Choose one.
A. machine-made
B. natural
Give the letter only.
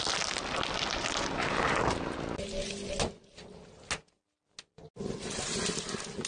B